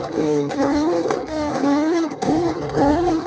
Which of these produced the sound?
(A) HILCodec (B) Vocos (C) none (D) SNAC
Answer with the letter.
D